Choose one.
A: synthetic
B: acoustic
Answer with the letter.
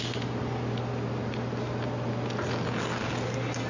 B